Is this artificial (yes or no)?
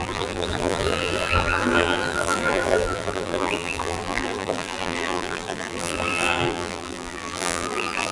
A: yes